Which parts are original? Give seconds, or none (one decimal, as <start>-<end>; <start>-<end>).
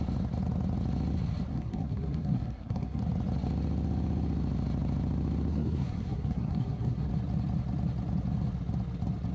0.0-1.5; 3.0-5.5; 7.1-9.3